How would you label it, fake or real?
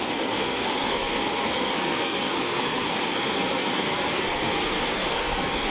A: fake